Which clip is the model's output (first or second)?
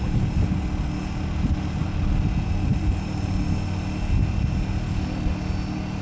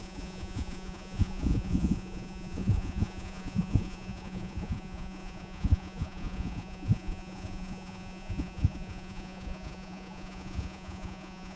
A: second